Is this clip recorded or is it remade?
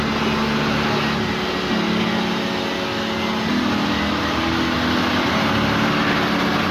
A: recorded